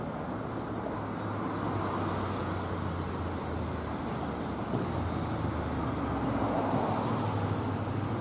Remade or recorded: recorded